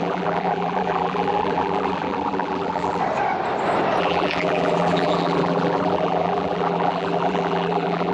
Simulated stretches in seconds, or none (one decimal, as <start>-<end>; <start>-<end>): 0.0-3.0; 4.0-8.1